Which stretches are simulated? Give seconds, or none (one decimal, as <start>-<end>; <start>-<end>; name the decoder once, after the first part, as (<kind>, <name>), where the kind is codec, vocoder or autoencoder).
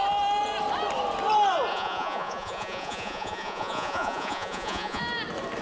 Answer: 1.7-5.0 (vocoder, Vocos)